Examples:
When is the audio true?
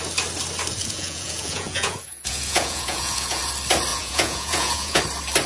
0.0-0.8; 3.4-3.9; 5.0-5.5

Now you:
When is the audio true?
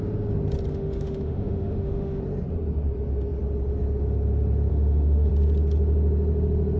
0.0-0.7; 2.2-4.7; 5.3-6.8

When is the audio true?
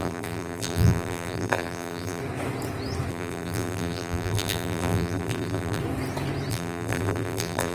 2.2-3.1; 5.8-6.5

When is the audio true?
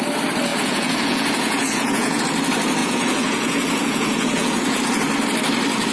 0.0-0.5; 2.2-2.8; 4.8-5.9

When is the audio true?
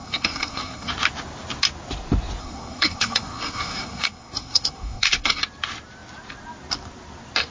0.9-2.4; 5.4-7.5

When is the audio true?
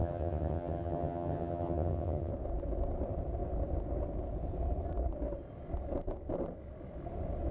2.3-7.5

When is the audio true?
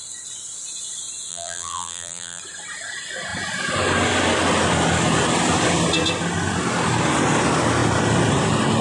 0.0-1.3; 2.4-8.8